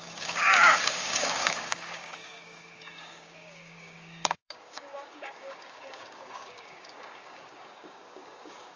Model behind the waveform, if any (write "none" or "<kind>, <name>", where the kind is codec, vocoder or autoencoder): codec, DAC